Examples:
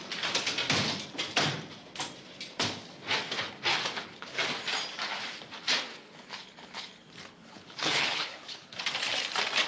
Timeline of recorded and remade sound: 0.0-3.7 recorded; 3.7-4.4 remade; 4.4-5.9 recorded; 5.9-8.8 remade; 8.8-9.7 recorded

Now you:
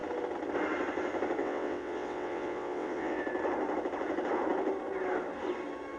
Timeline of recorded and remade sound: 0.0-1.4 recorded; 1.4-3.2 remade; 3.2-6.0 recorded

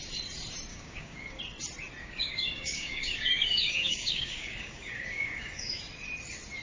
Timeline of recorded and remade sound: 0.0-0.7 recorded; 0.7-1.4 remade; 1.4-2.0 recorded; 2.0-5.8 remade; 5.8-6.6 recorded

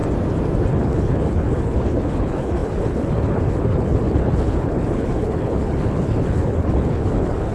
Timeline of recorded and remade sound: 0.0-0.7 recorded; 0.7-7.5 remade

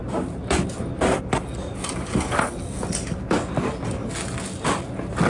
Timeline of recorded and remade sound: 0.0-5.3 recorded

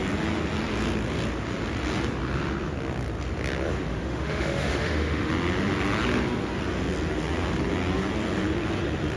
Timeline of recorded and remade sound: 0.0-3.9 recorded; 3.9-5.3 remade; 5.3-9.2 recorded

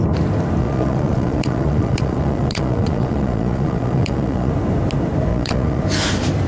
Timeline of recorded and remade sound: 0.0-0.6 recorded; 0.6-4.5 remade; 4.5-5.3 recorded; 5.3-5.8 remade; 5.8-6.5 recorded